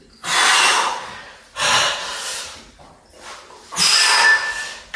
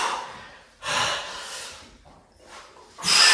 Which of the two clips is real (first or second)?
first